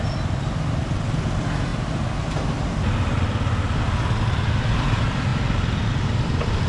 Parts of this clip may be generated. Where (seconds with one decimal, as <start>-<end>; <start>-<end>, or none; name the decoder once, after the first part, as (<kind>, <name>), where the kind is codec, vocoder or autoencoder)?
none